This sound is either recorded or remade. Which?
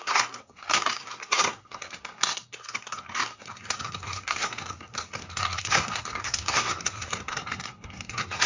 remade